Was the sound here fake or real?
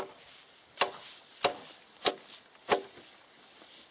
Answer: real